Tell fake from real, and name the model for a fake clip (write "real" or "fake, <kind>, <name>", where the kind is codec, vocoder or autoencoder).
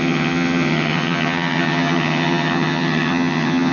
fake, vocoder, HiFi-GAN